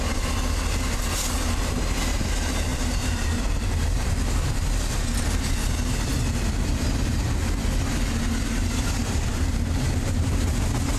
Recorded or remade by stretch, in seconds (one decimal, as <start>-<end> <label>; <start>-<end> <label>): 0.0-2.7 recorded; 2.7-4.1 remade; 4.1-9.3 recorded; 9.3-10.3 remade; 10.3-11.0 recorded